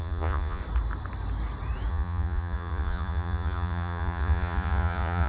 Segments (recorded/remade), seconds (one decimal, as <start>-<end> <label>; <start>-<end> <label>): 0.0-0.6 remade; 0.6-1.9 recorded; 1.9-5.3 remade